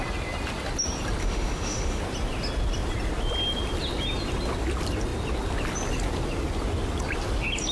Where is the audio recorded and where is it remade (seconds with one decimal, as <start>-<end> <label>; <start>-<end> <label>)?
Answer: 0.0-1.2 recorded; 1.2-2.0 remade; 2.0-7.7 recorded